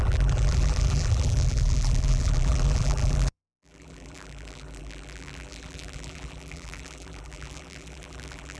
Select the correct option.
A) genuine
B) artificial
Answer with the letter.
B